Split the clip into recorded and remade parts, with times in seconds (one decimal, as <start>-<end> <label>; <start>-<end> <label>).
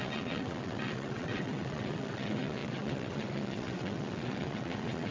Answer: 0.0-5.1 remade